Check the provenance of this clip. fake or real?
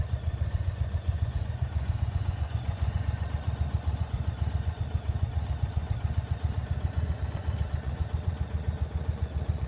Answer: fake